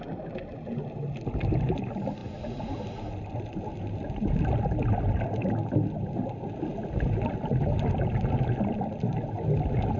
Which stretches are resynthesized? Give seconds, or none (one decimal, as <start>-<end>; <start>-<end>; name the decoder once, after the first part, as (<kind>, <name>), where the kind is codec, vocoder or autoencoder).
none